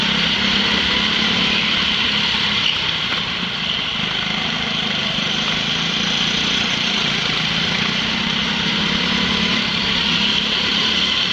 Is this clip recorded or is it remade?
recorded